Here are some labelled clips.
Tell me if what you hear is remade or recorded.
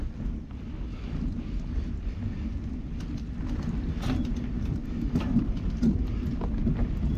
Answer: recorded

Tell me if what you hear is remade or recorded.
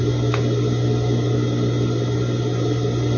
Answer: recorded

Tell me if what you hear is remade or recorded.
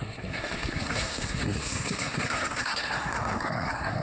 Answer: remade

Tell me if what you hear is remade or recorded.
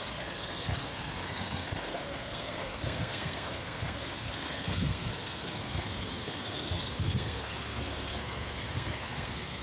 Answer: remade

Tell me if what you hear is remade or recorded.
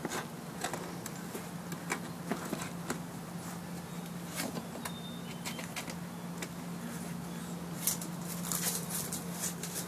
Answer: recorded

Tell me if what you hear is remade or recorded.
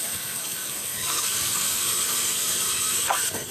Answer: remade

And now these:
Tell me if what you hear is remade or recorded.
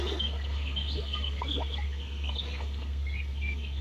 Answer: remade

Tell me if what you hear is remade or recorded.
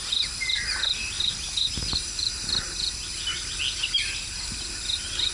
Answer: recorded